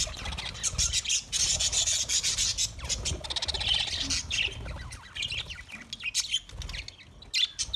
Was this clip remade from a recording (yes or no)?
no